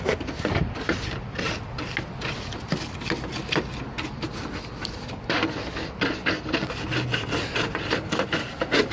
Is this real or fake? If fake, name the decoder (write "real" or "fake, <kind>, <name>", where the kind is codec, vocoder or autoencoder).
real